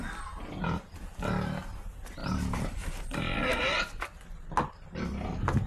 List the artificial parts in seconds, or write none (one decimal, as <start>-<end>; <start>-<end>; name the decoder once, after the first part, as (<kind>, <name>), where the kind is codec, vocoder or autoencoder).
none